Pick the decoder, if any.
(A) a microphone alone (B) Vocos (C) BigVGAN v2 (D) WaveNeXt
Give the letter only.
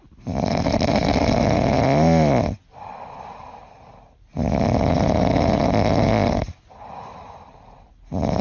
A